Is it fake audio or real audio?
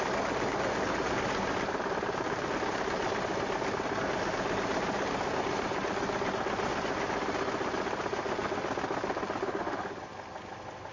real